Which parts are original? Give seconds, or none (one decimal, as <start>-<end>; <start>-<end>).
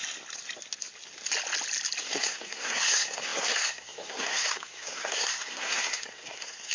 0.0-2.0